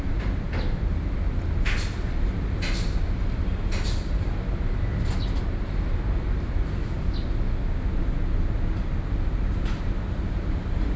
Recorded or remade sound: recorded